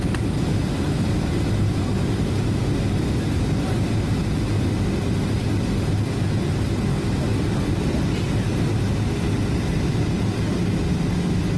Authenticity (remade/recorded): recorded